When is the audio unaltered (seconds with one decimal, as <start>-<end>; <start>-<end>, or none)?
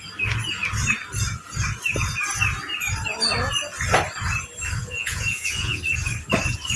0.0-4.8; 5.8-6.8